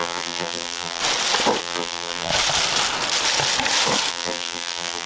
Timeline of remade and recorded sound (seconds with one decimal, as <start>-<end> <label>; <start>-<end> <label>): 0.0-1.0 remade; 1.0-1.6 recorded; 1.6-2.3 remade; 2.3-4.1 recorded; 4.1-5.1 remade